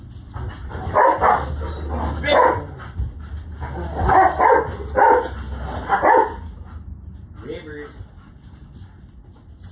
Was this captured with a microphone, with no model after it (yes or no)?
yes